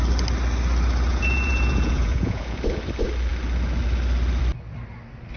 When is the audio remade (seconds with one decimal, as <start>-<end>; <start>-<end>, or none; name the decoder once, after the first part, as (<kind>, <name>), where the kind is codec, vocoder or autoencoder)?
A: 1.1-2.6 (vocoder, Vocos)